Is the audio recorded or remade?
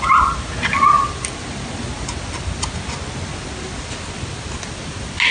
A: recorded